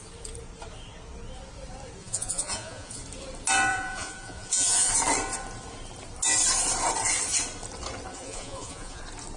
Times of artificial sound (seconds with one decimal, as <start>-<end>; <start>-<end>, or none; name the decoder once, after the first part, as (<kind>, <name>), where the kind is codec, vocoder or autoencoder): 2.0-3.0 (vocoder, Vocos); 3.7-4.9; 8.1-9.0